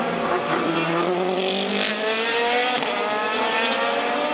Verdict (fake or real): real